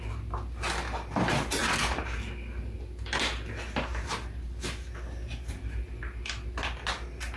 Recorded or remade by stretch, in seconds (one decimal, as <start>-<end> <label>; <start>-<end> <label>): 0.0-7.4 recorded